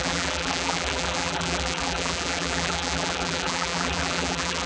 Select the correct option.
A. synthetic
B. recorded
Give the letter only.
A